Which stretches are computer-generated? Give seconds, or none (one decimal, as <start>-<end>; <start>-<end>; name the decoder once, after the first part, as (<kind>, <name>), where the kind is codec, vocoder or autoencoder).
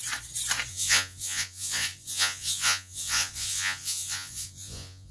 0.7-5.1 (vocoder, Vocos)